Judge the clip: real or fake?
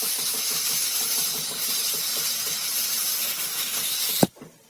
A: fake